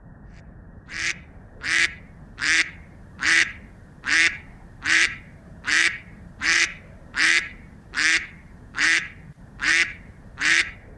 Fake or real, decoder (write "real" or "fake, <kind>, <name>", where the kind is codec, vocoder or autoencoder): fake, vocoder, BigVGAN v2